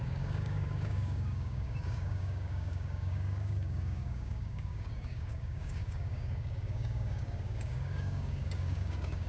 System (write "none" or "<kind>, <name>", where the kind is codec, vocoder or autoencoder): codec, DAC